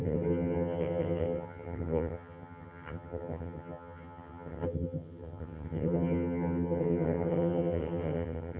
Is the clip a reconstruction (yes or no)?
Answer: yes